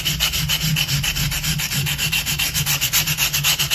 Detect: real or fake real